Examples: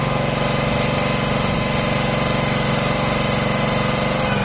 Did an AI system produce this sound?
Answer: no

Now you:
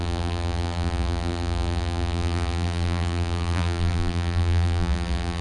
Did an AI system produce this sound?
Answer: yes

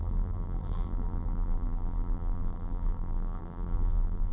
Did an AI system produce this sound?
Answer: yes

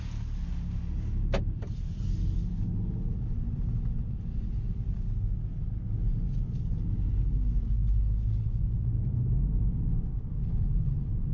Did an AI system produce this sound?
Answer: no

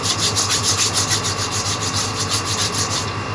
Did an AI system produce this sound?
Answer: no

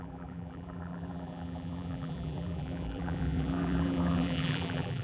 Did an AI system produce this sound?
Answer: yes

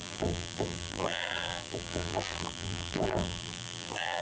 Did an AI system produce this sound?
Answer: yes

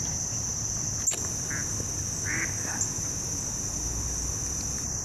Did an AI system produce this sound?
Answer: no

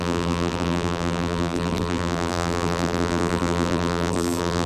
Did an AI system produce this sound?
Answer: yes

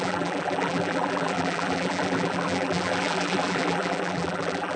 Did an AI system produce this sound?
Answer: yes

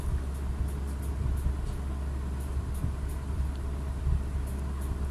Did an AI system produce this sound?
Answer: no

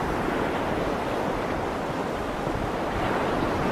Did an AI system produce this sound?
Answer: no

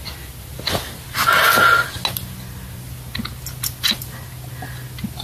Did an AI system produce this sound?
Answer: no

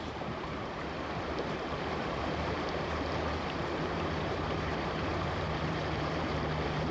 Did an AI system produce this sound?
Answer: yes